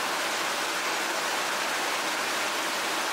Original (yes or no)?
yes